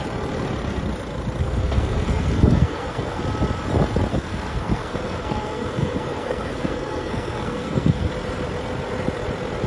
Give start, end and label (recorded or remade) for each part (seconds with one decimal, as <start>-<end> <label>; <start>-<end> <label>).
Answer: 0.0-1.4 recorded; 1.4-3.2 remade; 3.2-4.1 recorded; 4.1-8.1 remade; 8.1-9.7 recorded